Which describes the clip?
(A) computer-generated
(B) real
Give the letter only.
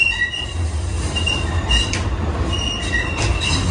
B